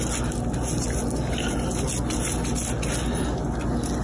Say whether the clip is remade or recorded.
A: recorded